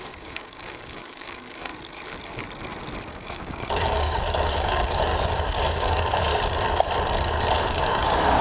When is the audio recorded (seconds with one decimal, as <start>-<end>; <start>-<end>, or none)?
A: 1.7-3.1; 5.1-5.7; 6.3-7.6